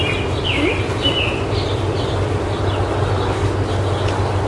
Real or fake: real